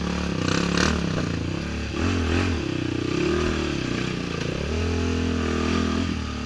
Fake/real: real